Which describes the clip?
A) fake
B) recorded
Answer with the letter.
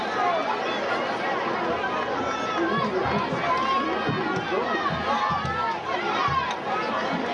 B